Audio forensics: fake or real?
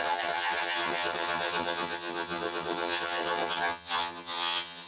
fake